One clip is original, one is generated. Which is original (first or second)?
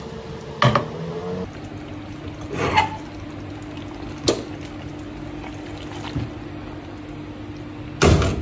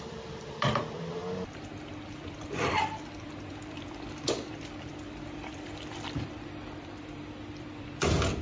first